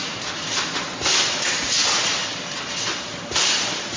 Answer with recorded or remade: recorded